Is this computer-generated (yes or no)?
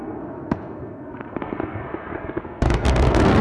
yes